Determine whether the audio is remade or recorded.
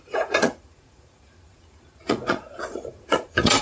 remade